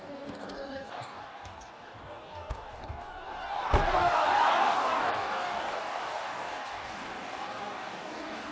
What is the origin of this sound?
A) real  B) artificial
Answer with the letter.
B